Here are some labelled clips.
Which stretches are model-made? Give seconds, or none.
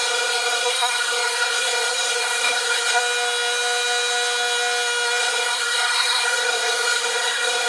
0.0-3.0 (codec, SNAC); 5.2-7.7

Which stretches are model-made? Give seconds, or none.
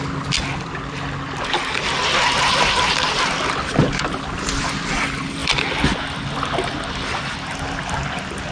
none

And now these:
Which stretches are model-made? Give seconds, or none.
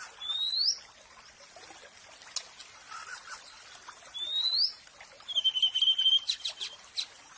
none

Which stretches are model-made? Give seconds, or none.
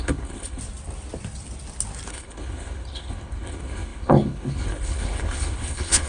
0.0-0.6 (codec, HILCodec); 2.1-6.1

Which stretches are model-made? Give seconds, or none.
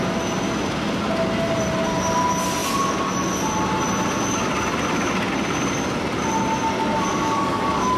7.1-8.0 (codec, DAC)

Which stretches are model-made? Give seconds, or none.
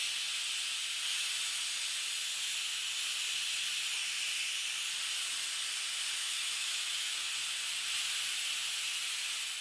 6.2-7.3 (autoencoder, DAC-VAE)